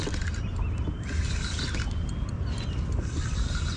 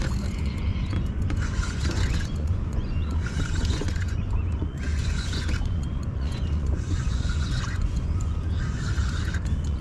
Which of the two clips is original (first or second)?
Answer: first